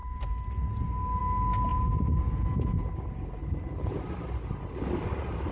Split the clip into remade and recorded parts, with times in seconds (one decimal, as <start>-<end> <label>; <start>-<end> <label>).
0.0-1.7 recorded; 1.7-2.9 remade; 2.9-5.5 recorded